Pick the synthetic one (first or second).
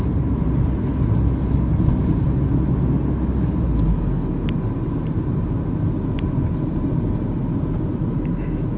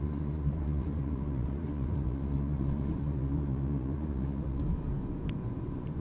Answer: second